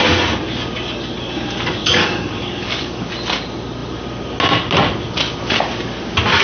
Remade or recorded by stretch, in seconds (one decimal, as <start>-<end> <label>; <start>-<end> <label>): 0.0-1.8 recorded; 1.8-3.1 remade; 3.1-6.4 recorded